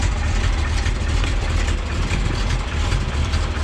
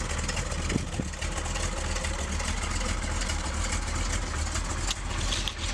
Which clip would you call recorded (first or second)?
second